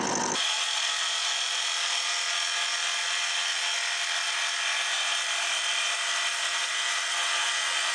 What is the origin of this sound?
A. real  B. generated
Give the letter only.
A